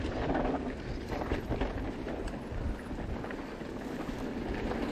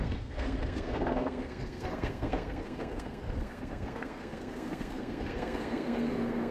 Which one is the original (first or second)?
first